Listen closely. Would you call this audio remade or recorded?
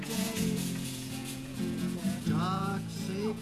remade